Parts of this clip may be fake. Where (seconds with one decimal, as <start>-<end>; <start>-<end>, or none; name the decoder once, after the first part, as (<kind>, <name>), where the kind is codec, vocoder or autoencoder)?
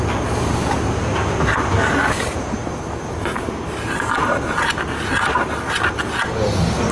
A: none